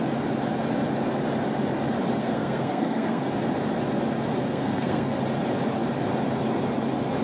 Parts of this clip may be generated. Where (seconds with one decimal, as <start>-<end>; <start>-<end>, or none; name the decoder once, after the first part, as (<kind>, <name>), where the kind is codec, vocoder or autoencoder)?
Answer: 2.2-3.2 (codec, SNAC); 4.5-5.2